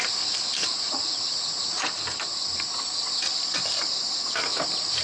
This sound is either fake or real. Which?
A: real